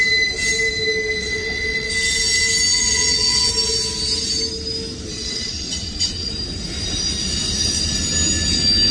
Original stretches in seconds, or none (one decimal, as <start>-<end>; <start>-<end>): 0.0-1.2; 1.9-2.7; 3.5-5.1; 6.3-8.9